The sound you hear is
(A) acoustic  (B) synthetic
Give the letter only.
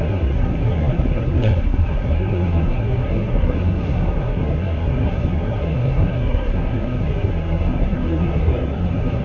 B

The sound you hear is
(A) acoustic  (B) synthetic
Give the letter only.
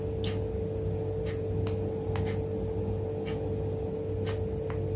A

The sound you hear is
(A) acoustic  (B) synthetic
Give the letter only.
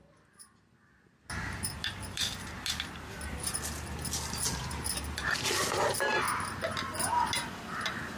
A